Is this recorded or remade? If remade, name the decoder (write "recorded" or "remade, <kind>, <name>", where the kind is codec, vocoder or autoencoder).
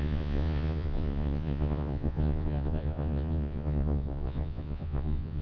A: remade, vocoder, Vocos